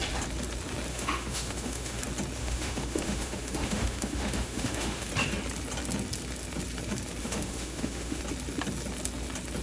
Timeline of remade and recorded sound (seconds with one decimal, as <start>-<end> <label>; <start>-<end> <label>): 0.0-0.9 recorded; 0.9-2.0 remade; 2.0-2.4 recorded; 2.4-5.1 remade; 5.1-7.2 recorded; 7.2-8.2 remade; 8.2-9.6 recorded